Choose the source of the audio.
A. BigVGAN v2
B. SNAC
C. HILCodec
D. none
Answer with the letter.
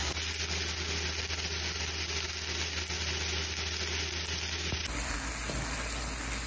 D